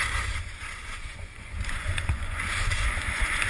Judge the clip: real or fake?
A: fake